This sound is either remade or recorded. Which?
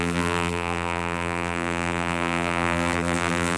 remade